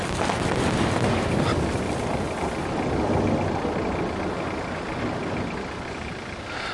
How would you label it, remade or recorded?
recorded